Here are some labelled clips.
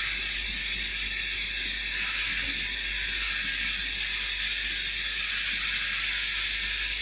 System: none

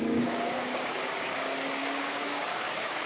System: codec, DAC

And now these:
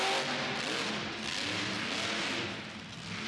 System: none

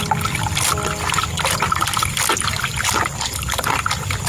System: none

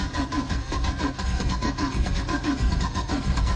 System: codec, SNAC